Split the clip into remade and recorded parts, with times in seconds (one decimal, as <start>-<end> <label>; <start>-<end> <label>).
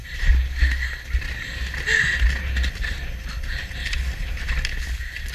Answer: 0.0-5.3 recorded